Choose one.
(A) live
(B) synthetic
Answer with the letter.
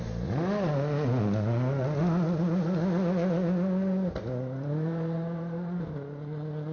A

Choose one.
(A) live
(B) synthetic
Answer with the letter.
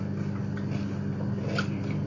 A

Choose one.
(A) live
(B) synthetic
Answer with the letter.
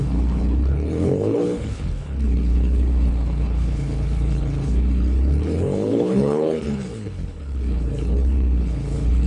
B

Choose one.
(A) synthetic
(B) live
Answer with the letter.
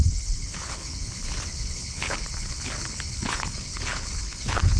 A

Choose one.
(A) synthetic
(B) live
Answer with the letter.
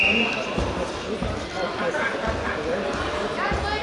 B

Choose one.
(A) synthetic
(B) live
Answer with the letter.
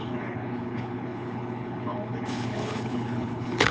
A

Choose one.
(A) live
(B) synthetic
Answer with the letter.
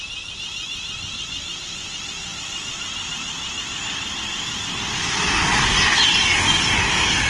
A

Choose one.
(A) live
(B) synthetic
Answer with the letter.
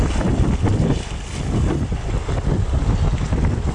A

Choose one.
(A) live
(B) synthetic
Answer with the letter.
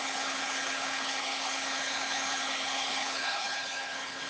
B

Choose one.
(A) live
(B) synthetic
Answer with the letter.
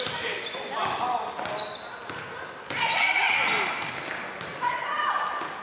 A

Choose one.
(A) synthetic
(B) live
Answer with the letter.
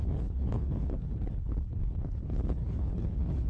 A